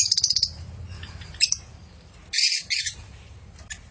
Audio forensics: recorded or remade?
remade